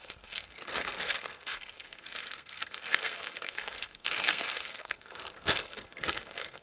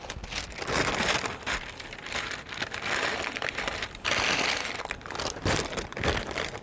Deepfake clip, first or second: first